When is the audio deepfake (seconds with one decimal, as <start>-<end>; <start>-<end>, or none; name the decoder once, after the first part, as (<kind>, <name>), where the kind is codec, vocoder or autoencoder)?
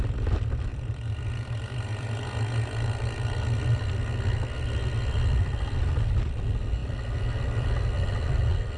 0.7-2.1 (vocoder, BigVGAN v2)